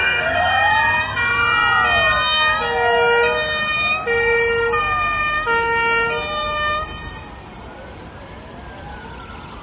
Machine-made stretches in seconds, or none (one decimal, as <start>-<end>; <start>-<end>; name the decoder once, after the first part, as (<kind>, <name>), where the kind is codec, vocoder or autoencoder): 0.0-0.7 (codec, SNAC)